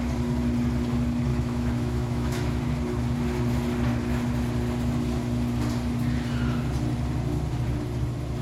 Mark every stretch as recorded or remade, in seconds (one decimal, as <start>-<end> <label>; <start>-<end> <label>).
0.0-1.3 recorded; 1.3-2.6 remade; 2.6-8.4 recorded